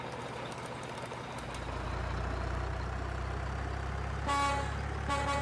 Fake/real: real